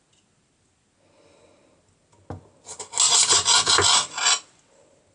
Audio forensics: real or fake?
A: real